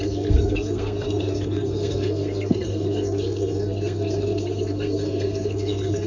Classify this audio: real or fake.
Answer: fake